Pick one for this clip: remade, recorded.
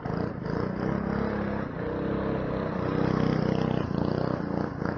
recorded